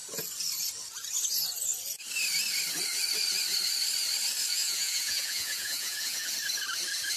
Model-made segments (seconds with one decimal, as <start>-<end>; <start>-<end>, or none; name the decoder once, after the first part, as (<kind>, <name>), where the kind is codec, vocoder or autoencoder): 4.5-6.3 (vocoder, Vocos)